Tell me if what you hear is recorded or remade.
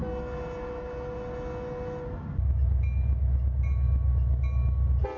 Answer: recorded